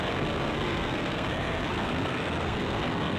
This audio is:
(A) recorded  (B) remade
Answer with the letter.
B